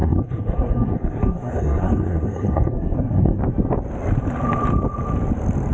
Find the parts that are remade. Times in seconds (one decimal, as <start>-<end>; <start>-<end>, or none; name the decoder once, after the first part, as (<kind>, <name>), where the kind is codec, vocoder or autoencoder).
0.0-3.4 (codec, SNAC)